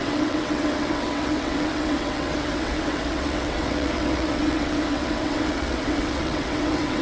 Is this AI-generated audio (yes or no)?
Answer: yes